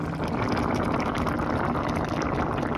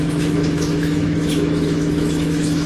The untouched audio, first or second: first